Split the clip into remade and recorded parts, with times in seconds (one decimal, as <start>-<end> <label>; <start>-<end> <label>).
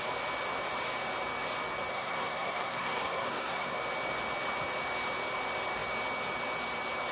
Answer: 0.0-1.9 recorded; 1.9-3.8 remade; 3.8-7.1 recorded